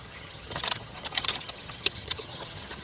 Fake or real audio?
fake